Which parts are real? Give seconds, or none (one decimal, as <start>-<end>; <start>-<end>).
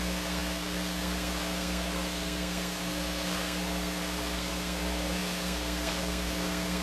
none